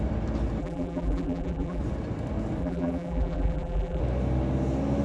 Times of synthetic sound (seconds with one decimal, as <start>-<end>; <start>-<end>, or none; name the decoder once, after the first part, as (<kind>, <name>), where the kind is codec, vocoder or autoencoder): 0.6-1.8 (vocoder, BigVGAN v2); 2.6-4.0